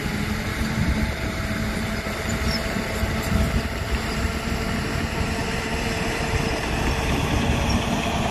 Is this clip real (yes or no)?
no